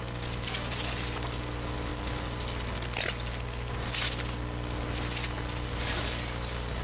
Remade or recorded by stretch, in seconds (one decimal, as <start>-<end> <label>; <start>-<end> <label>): 0.0-6.8 recorded